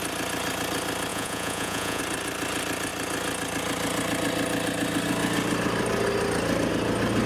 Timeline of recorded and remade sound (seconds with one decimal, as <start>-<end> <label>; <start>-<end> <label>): 0.0-1.1 recorded; 1.1-2.0 remade; 2.0-7.3 recorded